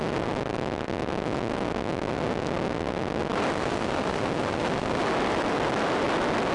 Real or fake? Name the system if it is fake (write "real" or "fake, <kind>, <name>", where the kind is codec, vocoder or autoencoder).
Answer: real